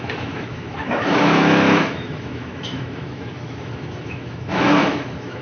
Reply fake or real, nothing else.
fake